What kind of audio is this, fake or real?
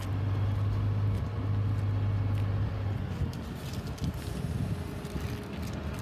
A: real